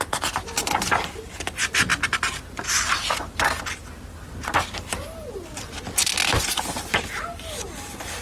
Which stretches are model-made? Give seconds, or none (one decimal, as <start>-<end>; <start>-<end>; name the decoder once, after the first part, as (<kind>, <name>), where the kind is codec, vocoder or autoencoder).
none